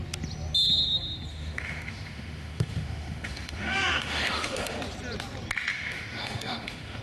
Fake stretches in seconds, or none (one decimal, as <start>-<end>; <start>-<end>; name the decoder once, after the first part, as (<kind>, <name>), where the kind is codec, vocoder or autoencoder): 1.3-4.8 (autoencoder, DAC-VAE); 5.7-7.0